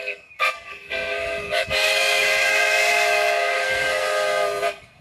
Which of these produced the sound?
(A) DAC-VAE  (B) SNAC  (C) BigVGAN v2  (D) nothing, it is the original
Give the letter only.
B